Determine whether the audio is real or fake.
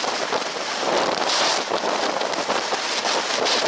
real